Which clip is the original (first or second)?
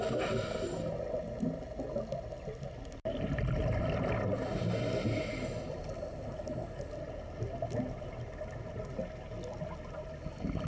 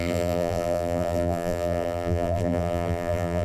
first